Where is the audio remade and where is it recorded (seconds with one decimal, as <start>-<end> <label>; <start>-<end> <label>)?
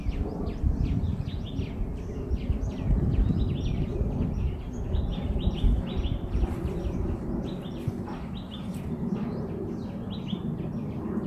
0.0-11.3 recorded